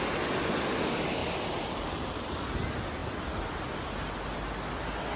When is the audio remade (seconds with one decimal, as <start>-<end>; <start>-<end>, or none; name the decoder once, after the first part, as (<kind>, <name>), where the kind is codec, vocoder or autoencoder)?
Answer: 1.2-2.5 (vocoder, BigVGAN v2)